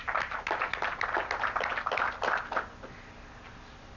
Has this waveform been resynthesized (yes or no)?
no